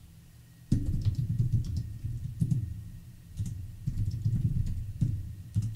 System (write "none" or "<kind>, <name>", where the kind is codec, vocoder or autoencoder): vocoder, BigVGAN v2